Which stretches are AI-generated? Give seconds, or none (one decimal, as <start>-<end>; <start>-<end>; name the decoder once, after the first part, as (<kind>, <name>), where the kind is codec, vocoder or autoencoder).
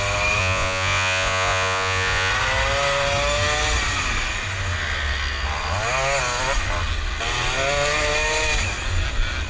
0.4-2.3 (vocoder, Vocos)